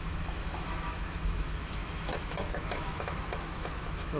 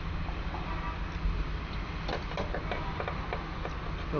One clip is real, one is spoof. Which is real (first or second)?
second